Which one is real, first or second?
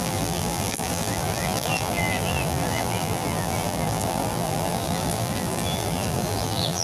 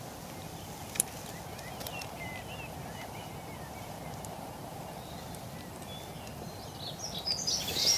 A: second